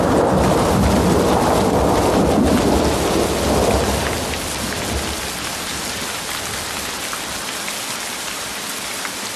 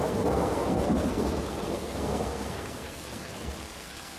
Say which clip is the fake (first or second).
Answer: second